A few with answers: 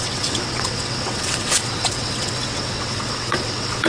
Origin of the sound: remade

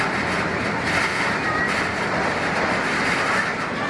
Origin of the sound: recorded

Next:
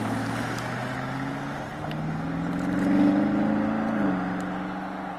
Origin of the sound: recorded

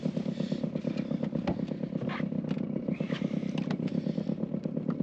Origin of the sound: recorded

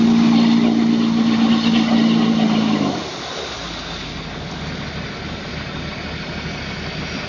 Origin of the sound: recorded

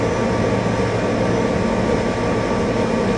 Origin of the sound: recorded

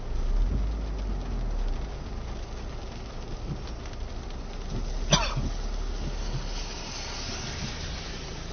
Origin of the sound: recorded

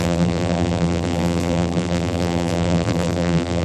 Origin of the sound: remade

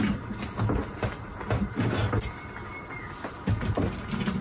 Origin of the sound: recorded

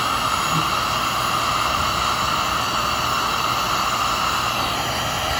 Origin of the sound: recorded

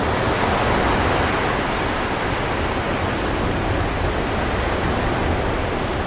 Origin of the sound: recorded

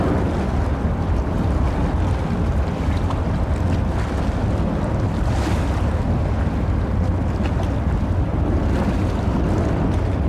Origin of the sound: recorded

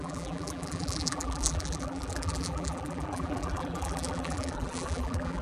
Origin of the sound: remade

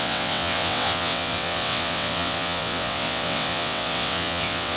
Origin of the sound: remade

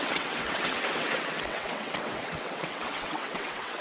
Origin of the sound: remade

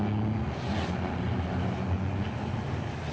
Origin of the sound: recorded